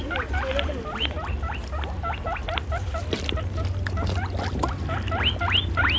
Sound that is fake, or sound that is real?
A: real